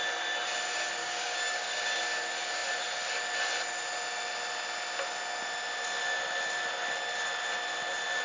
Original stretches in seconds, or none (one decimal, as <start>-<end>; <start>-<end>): 0.0-1.0; 2.0-8.2